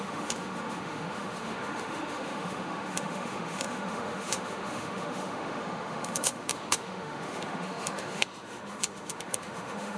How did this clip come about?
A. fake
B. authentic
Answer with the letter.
A